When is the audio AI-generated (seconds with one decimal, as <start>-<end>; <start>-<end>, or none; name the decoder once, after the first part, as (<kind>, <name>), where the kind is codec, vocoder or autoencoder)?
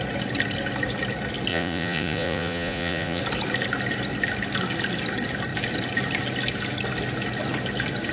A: 1.5-3.2 (vocoder, Vocos)